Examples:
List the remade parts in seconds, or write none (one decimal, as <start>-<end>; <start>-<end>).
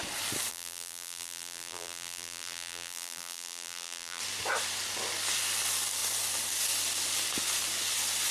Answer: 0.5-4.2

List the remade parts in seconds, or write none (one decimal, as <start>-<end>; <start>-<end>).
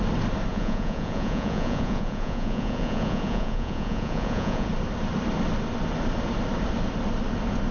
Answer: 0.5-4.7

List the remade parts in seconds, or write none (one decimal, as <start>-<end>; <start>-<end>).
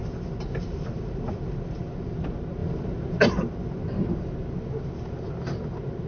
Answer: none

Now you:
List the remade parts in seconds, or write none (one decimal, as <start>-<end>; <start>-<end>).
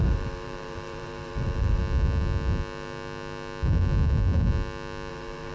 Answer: 0.0-1.8; 5.1-5.5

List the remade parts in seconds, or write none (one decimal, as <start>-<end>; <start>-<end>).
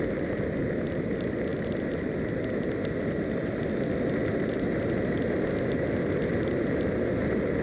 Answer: none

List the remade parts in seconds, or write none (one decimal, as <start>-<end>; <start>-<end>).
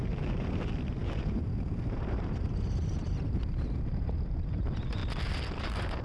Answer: 0.0-5.0; 5.6-6.0